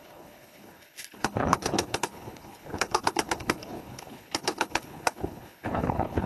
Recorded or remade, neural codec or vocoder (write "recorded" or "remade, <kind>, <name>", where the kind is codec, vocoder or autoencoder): remade, codec, HILCodec